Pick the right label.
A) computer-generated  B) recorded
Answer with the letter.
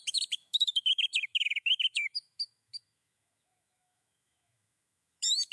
A